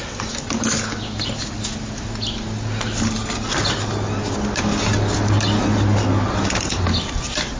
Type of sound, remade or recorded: recorded